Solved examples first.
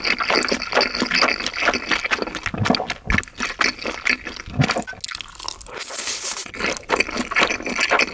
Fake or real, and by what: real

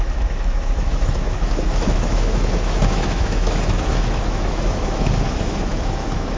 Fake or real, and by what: fake, autoencoder, DAC-VAE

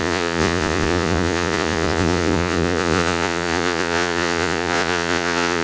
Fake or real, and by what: fake, vocoder, Vocos